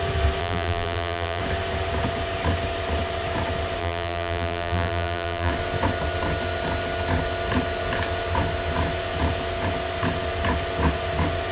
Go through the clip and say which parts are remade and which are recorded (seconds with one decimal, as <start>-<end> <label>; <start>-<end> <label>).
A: 0.0-0.4 recorded; 0.4-1.4 remade; 1.4-3.8 recorded; 3.8-5.5 remade; 5.5-11.5 recorded